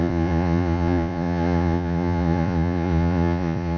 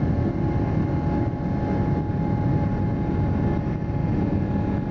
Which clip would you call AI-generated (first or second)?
first